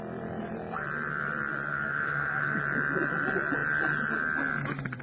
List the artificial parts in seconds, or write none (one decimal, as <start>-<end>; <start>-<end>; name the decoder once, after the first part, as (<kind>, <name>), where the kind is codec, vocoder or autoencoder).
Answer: 1.7-2.6 (autoencoder, DAC-VAE)